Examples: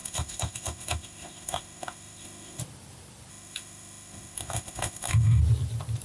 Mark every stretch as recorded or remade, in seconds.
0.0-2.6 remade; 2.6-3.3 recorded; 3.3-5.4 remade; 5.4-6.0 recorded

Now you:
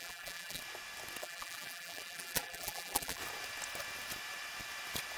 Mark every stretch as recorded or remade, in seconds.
0.0-0.6 remade; 0.6-1.2 recorded; 1.2-3.2 remade; 3.2-5.2 recorded

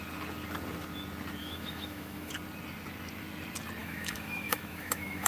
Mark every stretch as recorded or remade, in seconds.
0.0-1.4 recorded; 1.4-2.3 remade; 2.3-3.8 recorded; 3.8-5.3 remade